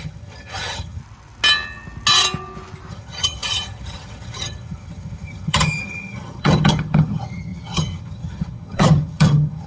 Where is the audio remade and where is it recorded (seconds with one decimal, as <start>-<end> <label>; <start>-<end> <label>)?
0.0-1.0 remade; 1.0-2.9 recorded; 2.9-9.7 remade